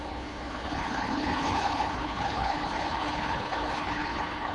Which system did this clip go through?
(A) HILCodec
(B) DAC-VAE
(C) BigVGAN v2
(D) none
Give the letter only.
A